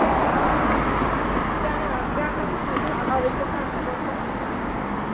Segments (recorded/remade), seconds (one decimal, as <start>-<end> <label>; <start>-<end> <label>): 0.0-5.1 recorded